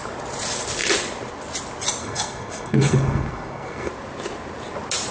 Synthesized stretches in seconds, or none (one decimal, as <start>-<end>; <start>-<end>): 2.0-3.9

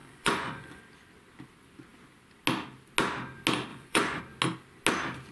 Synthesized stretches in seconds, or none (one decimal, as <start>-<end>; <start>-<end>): 0.0-0.8; 3.7-4.2

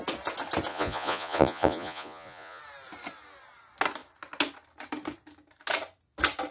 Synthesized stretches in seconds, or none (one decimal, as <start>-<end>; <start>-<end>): 0.7-2.6

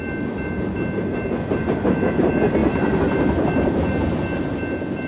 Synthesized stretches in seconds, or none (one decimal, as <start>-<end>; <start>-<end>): none

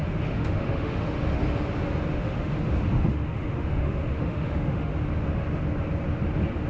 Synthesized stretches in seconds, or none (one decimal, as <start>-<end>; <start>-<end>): 0.0-1.4; 2.1-2.5; 3.1-4.9

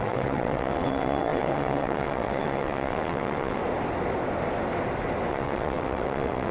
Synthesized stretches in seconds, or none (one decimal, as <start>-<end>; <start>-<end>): 0.0-3.6; 5.3-6.5